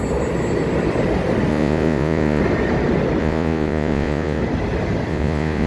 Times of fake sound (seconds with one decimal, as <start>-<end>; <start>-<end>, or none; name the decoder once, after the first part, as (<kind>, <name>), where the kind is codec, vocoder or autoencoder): 1.5-2.4 (vocoder, Vocos); 3.2-4.4; 5.1-5.7